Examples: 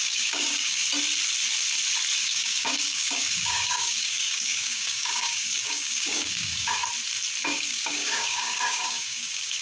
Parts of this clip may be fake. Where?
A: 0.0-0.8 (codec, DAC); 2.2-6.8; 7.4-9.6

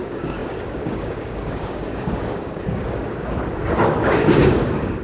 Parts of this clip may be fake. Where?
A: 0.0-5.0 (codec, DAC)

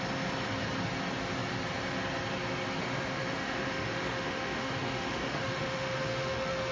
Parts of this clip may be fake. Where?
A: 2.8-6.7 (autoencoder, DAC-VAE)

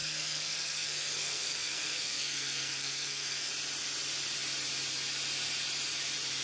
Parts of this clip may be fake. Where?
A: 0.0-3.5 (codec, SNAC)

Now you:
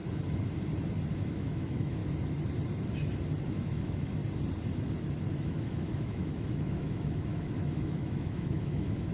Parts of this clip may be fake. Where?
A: 1.1-2.0 (autoencoder, DAC-VAE); 3.5-4.2; 5.4-9.1